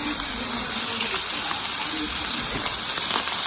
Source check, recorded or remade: recorded